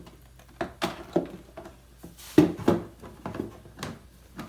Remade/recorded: recorded